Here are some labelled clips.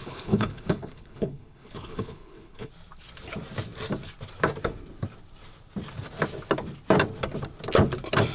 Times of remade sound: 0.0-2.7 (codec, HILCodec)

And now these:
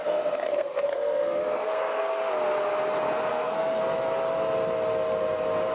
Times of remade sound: 0.0-2.2 (codec, SNAC); 3.3-3.8

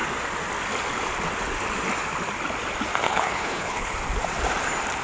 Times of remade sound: 3.1-3.9 (codec, HILCodec)

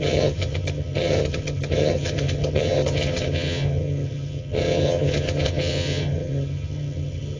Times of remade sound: 0.0-7.4 (vocoder, HiFi-GAN)

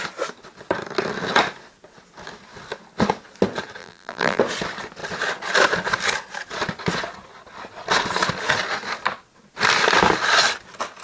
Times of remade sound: 3.8-4.4 (vocoder, BigVGAN v2)

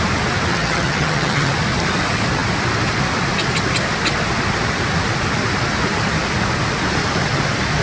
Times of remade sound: 0.5-1.5 (vocoder, HiFi-GAN)